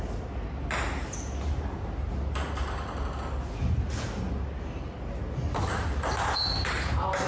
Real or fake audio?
real